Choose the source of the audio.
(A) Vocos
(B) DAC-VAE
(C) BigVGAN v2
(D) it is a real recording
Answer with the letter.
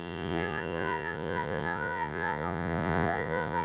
A